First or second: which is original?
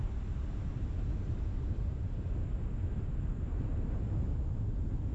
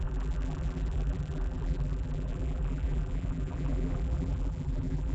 first